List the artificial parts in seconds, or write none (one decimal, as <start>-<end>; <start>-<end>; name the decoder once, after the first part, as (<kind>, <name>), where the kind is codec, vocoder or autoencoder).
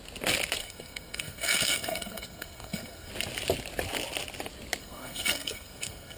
0.6-3.1 (codec, SNAC); 4.8-6.2